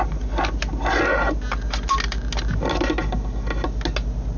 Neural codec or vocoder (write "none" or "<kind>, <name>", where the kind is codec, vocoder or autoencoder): none